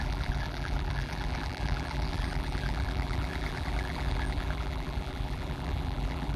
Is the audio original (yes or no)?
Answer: no